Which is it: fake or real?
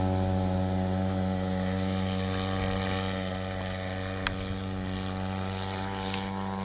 real